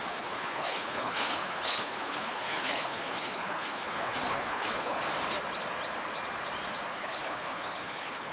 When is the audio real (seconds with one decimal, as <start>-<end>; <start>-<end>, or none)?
5.0-6.9

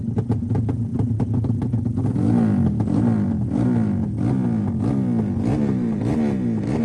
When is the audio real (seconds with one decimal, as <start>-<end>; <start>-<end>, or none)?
0.0-6.8

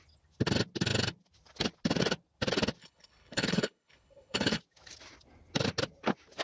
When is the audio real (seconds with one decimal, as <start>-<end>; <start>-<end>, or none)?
0.0-2.8; 4.6-6.4

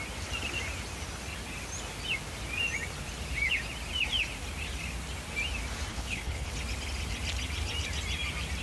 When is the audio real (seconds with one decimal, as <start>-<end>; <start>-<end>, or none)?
0.0-5.9; 6.5-8.6

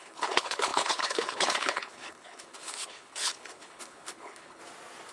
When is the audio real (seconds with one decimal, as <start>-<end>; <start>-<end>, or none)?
4.6-5.1

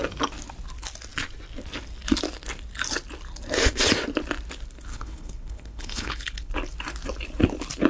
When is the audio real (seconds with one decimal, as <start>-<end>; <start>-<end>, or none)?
0.0-4.9; 6.5-7.9

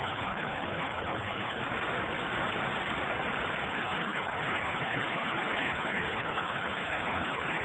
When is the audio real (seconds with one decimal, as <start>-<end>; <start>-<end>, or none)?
1.6-3.7